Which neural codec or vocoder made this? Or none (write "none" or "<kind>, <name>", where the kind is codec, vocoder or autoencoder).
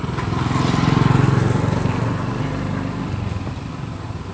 none